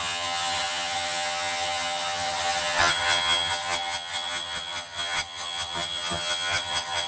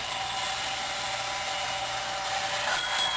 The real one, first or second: second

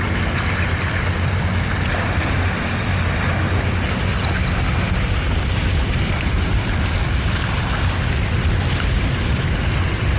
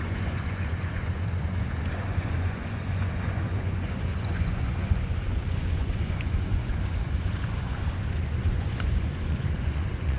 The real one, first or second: first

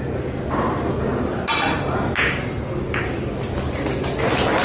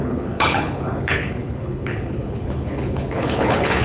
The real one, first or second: first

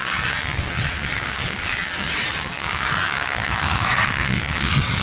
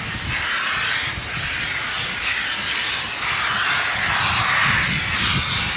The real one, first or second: second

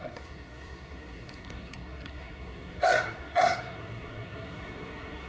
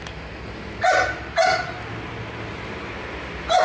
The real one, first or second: second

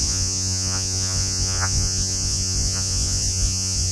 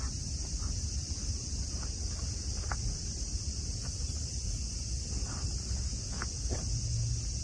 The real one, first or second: second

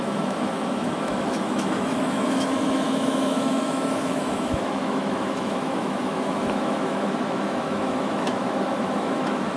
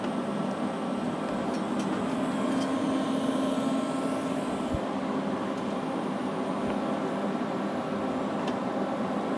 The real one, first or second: second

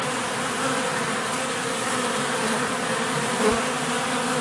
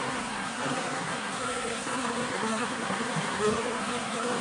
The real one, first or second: first